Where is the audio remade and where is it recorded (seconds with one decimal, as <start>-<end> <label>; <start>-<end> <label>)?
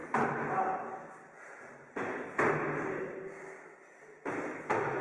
0.0-5.0 recorded